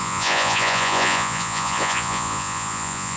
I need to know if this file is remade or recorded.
remade